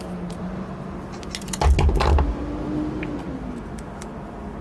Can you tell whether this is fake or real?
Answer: real